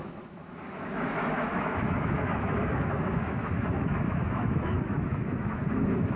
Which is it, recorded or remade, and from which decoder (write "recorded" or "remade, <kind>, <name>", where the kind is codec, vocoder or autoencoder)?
remade, autoencoder, DAC-VAE